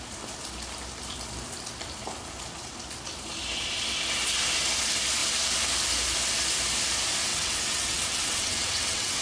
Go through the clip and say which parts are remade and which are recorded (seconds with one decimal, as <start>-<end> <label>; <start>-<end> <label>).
0.0-7.3 recorded; 7.3-9.2 remade